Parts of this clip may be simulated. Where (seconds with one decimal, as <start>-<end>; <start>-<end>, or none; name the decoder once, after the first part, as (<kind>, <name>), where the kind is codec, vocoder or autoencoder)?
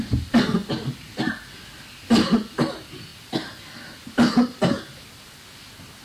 none